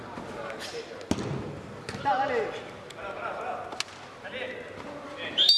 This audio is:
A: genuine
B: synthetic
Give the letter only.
A